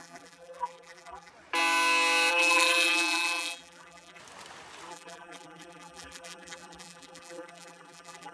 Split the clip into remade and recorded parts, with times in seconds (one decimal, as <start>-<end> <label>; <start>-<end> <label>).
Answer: 0.0-1.3 remade; 1.3-2.3 recorded; 2.3-4.2 remade; 4.2-4.9 recorded; 4.9-8.3 remade